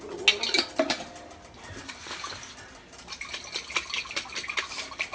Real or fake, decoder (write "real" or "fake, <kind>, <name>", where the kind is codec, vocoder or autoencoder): real